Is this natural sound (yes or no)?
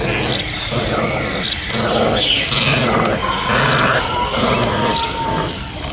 yes